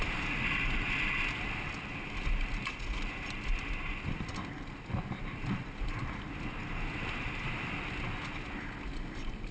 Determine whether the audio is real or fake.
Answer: real